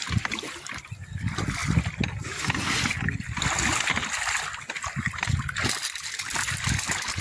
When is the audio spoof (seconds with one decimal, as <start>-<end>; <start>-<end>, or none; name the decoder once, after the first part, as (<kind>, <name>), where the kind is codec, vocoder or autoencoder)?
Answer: 0.0-0.9 (vocoder, BigVGAN v2)